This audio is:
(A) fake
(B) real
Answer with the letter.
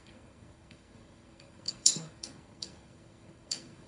A